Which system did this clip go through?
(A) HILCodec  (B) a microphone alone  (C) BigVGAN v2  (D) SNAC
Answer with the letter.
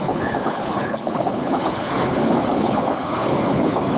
A